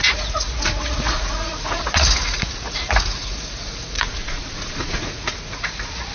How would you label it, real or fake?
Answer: fake